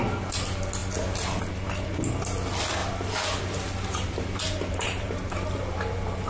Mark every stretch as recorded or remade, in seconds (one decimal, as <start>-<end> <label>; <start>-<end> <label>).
0.0-2.8 recorded; 2.8-6.3 remade